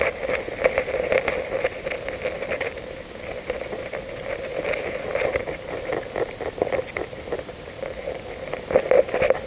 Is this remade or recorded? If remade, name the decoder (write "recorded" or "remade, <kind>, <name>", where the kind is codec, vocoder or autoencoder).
recorded